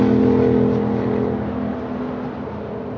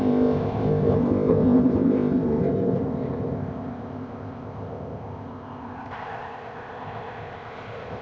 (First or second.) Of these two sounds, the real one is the first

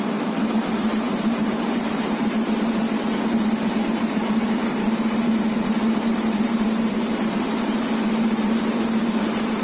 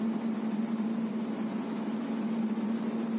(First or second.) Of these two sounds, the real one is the second